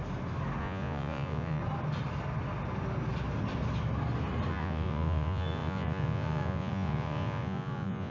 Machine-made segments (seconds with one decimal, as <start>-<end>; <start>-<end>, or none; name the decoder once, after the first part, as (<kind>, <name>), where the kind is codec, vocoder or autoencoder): 0.6-1.6 (vocoder, Vocos); 4.5-8.1